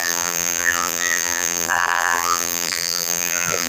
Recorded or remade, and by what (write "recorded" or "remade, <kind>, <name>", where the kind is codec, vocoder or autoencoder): remade, vocoder, BigVGAN v2